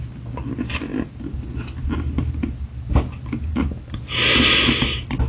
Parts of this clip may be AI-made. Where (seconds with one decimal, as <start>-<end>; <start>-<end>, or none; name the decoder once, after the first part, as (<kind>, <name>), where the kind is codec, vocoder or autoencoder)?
none